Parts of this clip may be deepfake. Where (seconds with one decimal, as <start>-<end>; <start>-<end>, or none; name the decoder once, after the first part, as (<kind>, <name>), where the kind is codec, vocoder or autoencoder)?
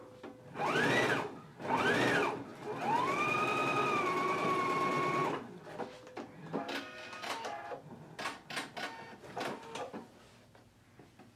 none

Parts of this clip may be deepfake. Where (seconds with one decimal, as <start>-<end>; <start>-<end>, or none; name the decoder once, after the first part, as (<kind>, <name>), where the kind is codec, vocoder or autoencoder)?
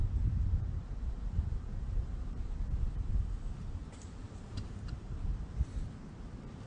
0.0-3.1 (vocoder, BigVGAN v2); 3.8-5.1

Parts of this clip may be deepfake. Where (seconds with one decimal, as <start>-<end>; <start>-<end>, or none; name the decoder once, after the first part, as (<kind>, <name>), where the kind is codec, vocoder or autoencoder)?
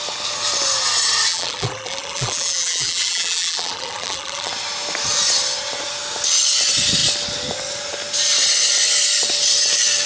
1.3-4.5 (vocoder, BigVGAN v2)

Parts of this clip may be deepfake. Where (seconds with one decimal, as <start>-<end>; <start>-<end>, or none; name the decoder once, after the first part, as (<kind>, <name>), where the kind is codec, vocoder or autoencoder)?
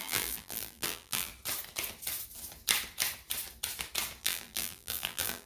0.0-1.3 (vocoder, BigVGAN v2); 4.2-5.5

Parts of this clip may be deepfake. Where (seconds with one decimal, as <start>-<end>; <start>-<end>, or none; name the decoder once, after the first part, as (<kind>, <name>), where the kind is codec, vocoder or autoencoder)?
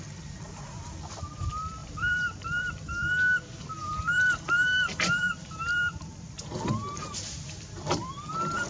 1.8-3.1 (vocoder, BigVGAN v2); 3.8-6.1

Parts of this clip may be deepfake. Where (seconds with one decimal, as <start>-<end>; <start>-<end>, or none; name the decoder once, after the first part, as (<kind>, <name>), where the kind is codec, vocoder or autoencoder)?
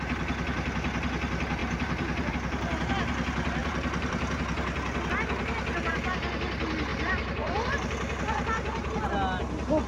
1.6-2.3 (vocoder, BigVGAN v2); 3.6-4.4; 6.9-7.7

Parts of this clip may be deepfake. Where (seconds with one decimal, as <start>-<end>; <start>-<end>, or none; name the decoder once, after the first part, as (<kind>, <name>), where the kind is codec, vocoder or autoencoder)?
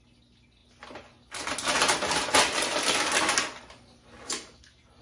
none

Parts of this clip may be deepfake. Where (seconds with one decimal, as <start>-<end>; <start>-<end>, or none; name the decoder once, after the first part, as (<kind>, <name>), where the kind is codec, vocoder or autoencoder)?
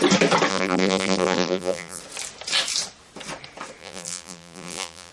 0.5-2.0 (vocoder, BigVGAN v2); 3.8-5.1